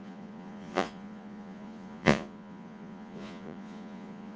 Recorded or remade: remade